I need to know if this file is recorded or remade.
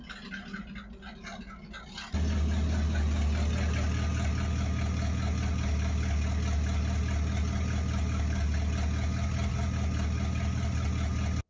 recorded